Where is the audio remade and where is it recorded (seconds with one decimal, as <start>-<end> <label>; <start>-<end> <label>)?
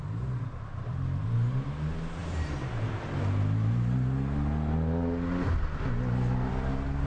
0.0-7.1 recorded